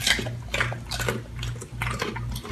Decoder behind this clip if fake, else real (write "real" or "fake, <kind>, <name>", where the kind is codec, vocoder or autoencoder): real